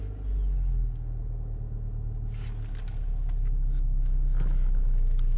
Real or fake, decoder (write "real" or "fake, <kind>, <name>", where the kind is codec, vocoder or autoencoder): real